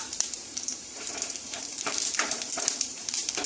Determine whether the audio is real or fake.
fake